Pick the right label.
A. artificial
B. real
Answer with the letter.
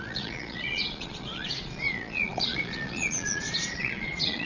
A